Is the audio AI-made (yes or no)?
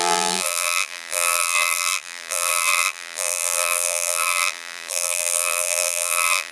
yes